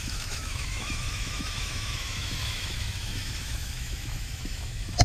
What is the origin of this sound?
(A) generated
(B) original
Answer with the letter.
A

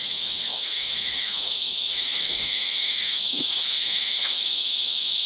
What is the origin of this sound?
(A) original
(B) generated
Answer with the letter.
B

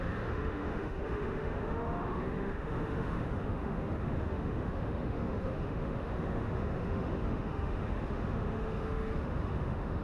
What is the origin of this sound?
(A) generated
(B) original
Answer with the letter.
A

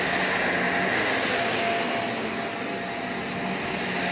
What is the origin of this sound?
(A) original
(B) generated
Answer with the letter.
A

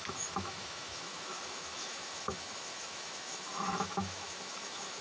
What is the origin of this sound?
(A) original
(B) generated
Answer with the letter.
B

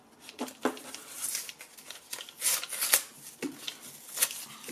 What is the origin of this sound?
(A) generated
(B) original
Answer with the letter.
B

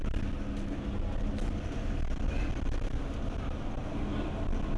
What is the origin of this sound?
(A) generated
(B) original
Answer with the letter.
B